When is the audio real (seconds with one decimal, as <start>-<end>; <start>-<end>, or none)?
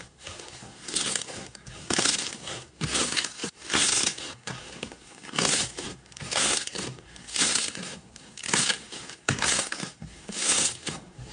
none